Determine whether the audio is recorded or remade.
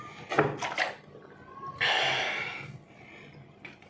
recorded